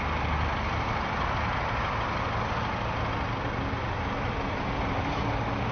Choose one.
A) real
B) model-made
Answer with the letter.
A